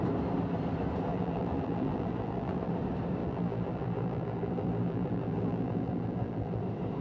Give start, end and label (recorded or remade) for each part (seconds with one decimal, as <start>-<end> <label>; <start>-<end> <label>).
0.0-1.1 recorded; 1.1-2.7 remade; 2.7-3.2 recorded; 3.2-6.6 remade; 6.6-7.0 recorded